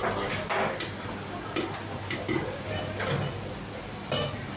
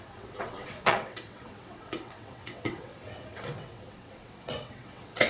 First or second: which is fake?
second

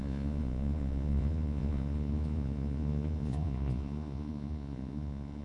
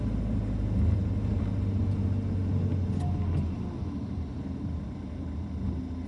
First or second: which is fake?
first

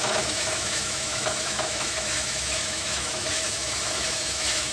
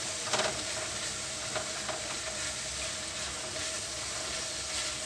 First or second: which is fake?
first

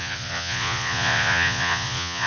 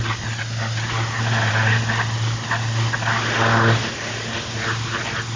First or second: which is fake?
first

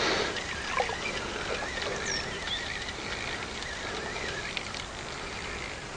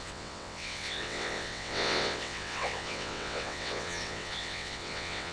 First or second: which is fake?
second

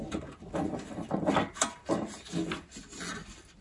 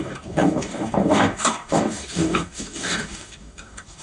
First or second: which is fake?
second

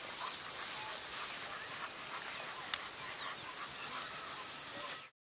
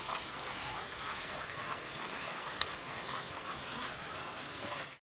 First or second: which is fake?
second